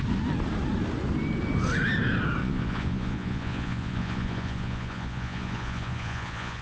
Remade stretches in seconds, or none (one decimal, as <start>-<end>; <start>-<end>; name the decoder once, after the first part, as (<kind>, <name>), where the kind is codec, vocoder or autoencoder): 2.4-6.6 (vocoder, Vocos)